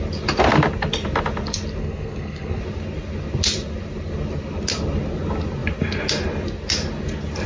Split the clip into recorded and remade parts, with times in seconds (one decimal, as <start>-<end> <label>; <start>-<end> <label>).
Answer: 0.0-1.8 recorded; 1.8-2.6 remade; 2.6-7.5 recorded